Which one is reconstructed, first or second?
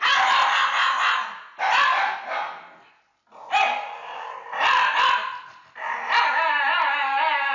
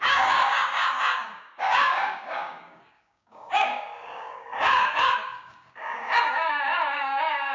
second